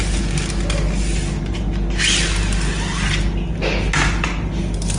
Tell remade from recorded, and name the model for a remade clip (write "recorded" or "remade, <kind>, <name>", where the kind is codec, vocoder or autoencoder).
recorded